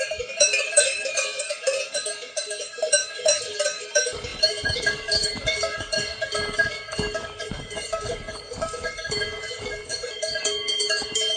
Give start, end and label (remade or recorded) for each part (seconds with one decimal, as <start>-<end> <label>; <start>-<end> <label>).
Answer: 0.0-11.4 remade